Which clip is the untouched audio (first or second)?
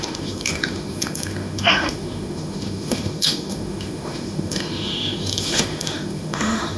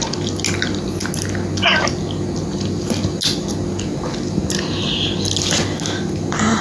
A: second